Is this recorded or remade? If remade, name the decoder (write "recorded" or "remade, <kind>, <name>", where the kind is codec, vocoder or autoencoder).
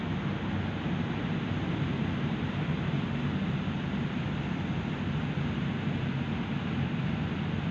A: recorded